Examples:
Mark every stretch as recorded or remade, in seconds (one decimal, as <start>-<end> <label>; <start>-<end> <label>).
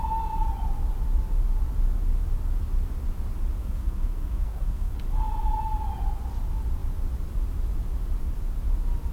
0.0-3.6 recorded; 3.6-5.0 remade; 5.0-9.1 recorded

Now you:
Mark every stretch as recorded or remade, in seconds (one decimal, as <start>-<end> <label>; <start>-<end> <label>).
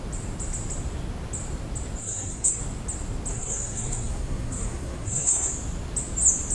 0.0-2.0 recorded; 2.0-2.6 remade; 2.6-3.3 recorded; 3.3-5.5 remade; 5.5-6.5 recorded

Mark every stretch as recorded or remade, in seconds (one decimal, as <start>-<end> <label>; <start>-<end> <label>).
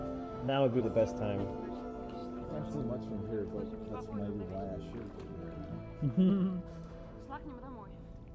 0.0-0.8 remade; 0.8-6.7 recorded; 6.7-7.2 remade; 7.2-8.3 recorded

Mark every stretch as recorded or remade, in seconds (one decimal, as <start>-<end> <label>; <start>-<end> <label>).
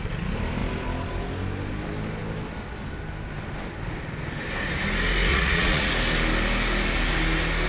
0.0-5.3 recorded; 5.3-5.9 remade; 5.9-7.7 recorded